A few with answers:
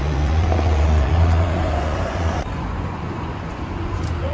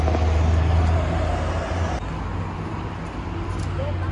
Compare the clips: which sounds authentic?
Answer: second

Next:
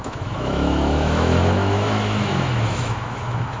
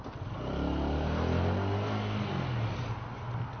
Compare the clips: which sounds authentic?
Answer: second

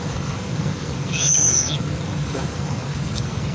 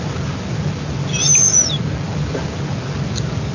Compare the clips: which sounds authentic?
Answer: second